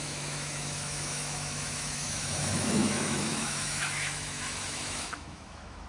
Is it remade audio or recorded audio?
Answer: remade